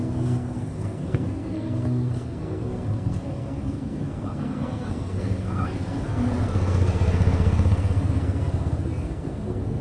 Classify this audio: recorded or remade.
remade